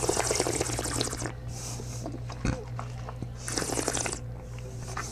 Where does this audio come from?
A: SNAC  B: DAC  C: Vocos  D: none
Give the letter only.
D